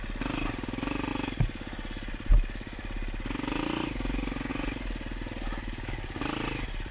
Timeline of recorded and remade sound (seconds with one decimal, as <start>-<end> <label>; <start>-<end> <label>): 0.0-6.9 recorded